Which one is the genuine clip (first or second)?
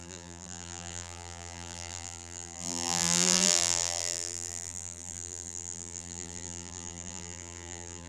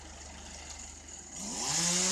second